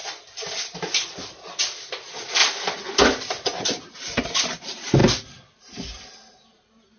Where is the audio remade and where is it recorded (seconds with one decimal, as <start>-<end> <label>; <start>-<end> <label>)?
0.0-1.6 remade; 1.6-2.4 recorded; 2.4-3.0 remade; 3.0-5.0 recorded; 5.0-5.6 remade; 5.6-7.0 recorded